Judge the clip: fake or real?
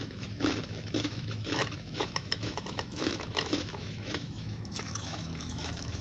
fake